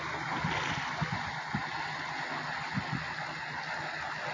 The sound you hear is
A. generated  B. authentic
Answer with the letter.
B